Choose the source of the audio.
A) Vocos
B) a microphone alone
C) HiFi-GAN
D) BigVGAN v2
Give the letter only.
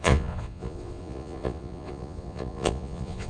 A